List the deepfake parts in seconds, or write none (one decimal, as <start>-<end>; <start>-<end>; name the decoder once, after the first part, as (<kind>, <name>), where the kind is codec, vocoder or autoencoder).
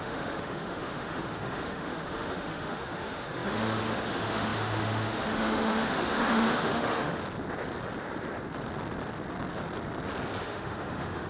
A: 0.0-7.2 (autoencoder, DAC-VAE); 10.4-11.3